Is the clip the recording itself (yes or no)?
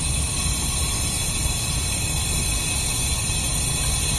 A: yes